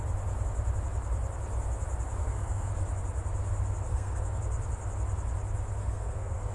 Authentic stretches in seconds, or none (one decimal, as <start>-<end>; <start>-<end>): 0.0-2.2; 2.7-3.9; 4.4-5.8